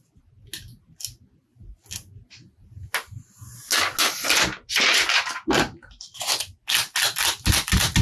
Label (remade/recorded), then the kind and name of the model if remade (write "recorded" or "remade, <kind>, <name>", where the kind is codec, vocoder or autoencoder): recorded